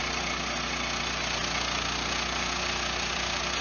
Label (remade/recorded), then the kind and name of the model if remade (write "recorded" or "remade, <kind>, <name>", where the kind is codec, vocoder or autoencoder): recorded